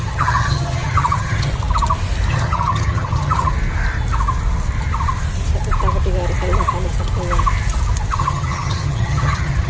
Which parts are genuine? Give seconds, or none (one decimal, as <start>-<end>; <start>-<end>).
1.5-2.3; 3.5-8.2

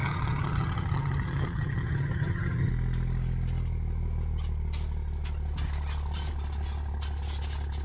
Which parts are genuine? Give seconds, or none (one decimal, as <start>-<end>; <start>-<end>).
2.7-7.8

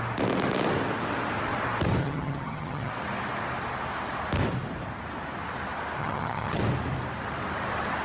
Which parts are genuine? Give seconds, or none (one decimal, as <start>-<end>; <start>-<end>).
0.0-2.0; 2.9-6.0; 6.6-8.0

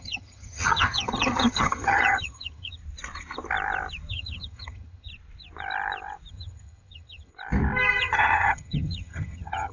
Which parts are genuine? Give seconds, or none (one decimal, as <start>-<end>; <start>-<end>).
2.8-4.1; 5.1-6.3; 7.3-8.0

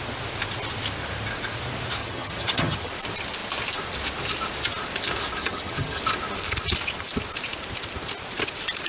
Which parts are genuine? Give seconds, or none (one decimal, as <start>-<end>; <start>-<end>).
0.0-2.0; 2.9-5.4; 6.0-8.9

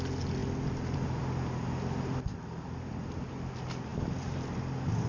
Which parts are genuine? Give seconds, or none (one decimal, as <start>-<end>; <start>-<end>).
0.0-5.1